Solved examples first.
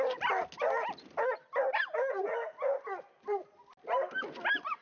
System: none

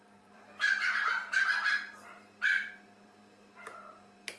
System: vocoder, BigVGAN v2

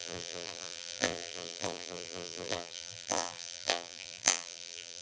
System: vocoder, BigVGAN v2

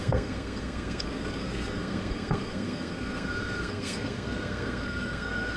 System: codec, SNAC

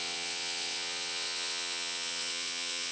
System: vocoder, WaveNeXt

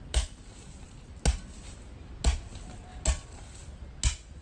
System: none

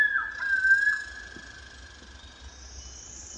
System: none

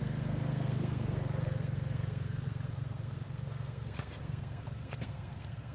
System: codec, SNAC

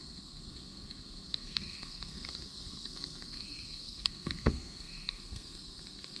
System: codec, SNAC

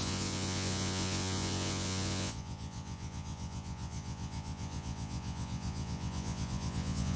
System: vocoder, Vocos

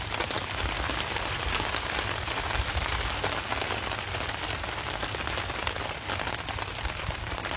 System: none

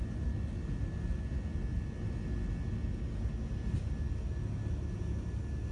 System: none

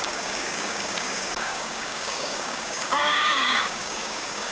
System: codec, DAC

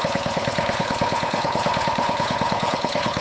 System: codec, HILCodec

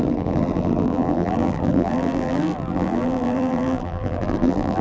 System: vocoder, BigVGAN v2